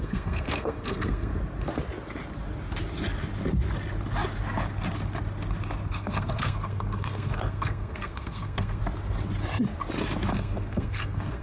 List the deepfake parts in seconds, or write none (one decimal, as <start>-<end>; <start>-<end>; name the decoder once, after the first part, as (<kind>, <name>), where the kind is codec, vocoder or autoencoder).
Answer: 0.0-1.3 (codec, SNAC); 5.9-8.8; 10.3-11.4